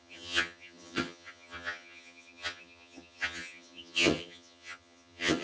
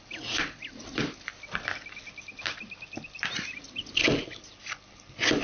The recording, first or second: second